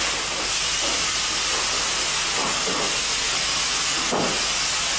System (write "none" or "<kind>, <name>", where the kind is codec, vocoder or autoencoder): none